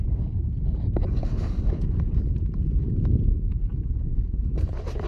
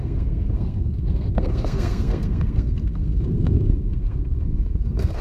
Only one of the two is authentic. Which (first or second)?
first